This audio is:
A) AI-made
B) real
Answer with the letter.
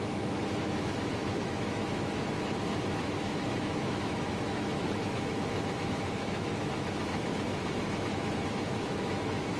A